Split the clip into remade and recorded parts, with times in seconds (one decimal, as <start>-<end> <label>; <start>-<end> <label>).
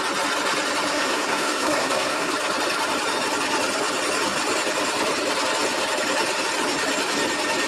0.0-0.9 recorded; 0.9-2.3 remade; 2.3-7.7 recorded